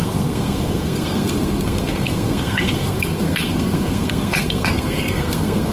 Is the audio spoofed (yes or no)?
yes